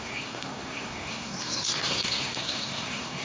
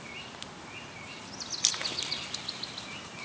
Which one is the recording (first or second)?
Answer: second